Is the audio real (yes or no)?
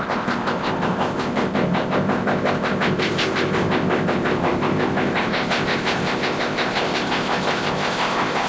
no